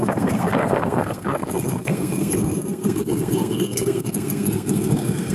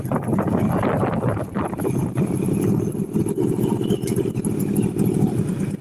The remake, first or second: first